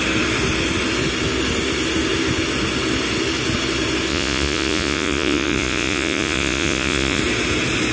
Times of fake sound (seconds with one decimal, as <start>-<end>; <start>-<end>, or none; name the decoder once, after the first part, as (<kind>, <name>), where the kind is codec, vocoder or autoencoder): 4.1-7.2 (vocoder, Vocos)